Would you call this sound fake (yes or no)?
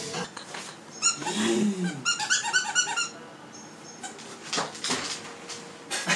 no